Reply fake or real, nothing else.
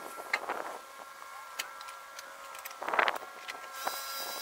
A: real